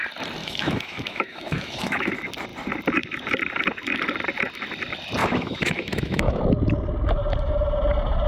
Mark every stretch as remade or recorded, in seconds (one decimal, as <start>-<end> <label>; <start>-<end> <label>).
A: 0.0-0.4 recorded; 0.4-2.1 remade; 2.1-5.2 recorded; 5.2-6.4 remade; 6.4-8.3 recorded